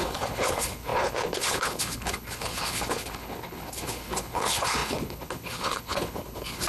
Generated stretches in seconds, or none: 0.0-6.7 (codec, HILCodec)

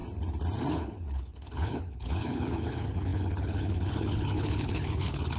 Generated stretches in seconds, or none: 0.7-5.4 (codec, HILCodec)

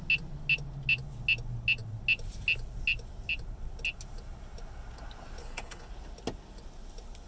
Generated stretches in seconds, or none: 5.4-5.9 (codec, HILCodec)

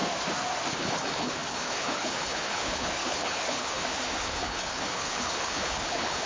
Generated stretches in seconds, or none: 0.7-6.3 (codec, HILCodec)

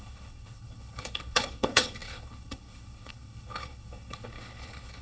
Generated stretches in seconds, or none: 0.0-5.0 (codec, HILCodec)

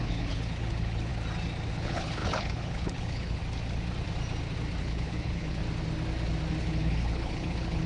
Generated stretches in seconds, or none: 0.0-1.1 (codec, HILCodec); 1.7-3.4; 4.8-5.6; 6.6-7.9

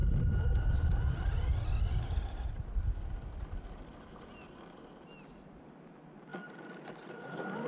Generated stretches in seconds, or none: none

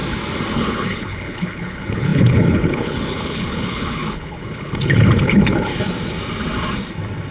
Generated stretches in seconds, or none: 0.5-5.7 (codec, HILCodec)